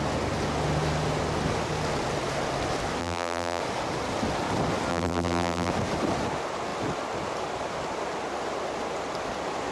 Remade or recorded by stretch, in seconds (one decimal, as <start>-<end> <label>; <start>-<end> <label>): 0.0-3.0 recorded; 3.0-3.6 remade; 3.6-4.9 recorded; 4.9-5.7 remade; 5.7-9.7 recorded